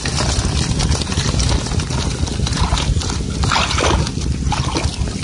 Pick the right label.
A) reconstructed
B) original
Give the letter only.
B